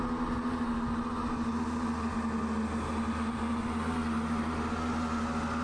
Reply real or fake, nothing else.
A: real